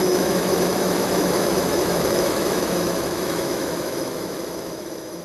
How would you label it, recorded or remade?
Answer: remade